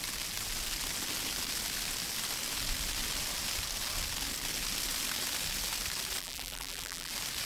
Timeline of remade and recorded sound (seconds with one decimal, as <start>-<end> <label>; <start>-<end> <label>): 0.0-6.2 recorded; 6.2-7.1 remade; 7.1-7.5 recorded